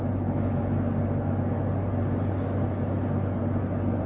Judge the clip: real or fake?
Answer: real